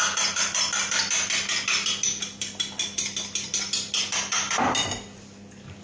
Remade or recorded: recorded